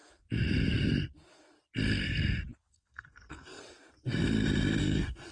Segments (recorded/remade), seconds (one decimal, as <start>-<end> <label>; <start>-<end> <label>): 0.0-2.7 recorded; 2.7-3.6 remade; 3.6-4.8 recorded; 4.8-5.3 remade